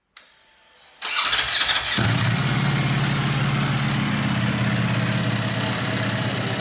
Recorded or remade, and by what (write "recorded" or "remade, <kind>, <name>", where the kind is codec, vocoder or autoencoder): recorded